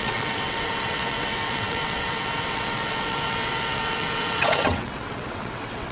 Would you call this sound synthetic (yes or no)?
yes